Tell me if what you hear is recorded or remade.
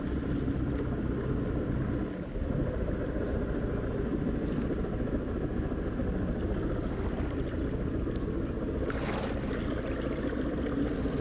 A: recorded